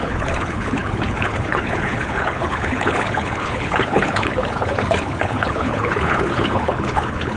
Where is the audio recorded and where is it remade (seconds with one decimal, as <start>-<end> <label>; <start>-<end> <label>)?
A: 0.0-7.4 remade